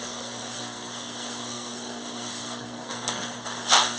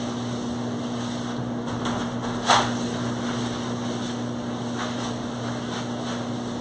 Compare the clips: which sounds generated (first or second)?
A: first